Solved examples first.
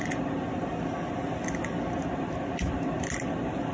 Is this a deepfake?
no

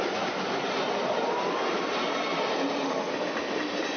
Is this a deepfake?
no